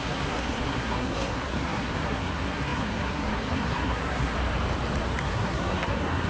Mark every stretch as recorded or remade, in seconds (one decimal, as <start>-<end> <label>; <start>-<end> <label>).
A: 0.0-4.3 remade; 4.3-5.2 recorded; 5.2-6.3 remade